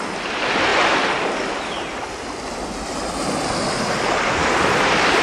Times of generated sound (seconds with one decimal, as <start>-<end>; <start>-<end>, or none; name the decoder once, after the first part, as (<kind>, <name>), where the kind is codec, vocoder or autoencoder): none